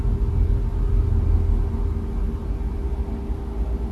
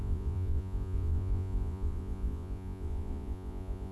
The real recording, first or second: first